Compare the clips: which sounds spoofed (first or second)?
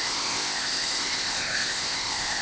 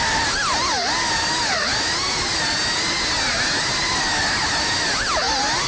first